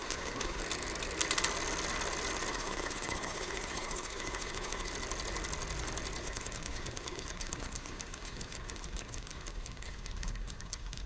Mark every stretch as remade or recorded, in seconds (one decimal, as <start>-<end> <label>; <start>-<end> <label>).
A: 0.0-0.6 remade; 0.6-2.5 recorded; 2.5-4.9 remade; 4.9-6.2 recorded; 6.2-11.1 remade